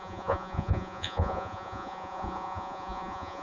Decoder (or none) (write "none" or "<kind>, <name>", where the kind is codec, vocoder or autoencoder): vocoder, Vocos